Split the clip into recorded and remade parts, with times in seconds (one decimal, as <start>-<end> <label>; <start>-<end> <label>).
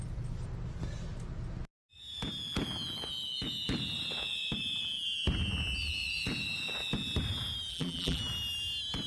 0.0-7.7 recorded; 7.7-8.2 remade; 8.2-9.1 recorded